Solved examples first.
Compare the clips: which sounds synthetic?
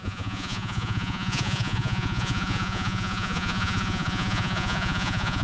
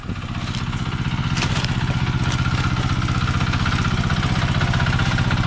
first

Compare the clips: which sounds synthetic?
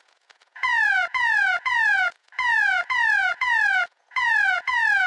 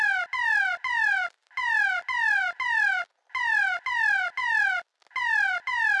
first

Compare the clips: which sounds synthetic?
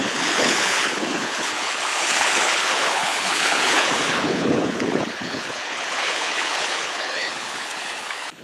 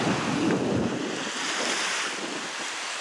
first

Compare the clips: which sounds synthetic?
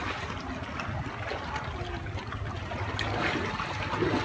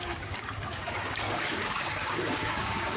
second